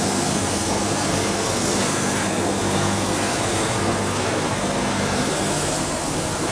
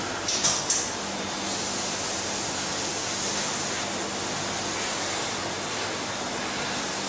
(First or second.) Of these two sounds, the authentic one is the second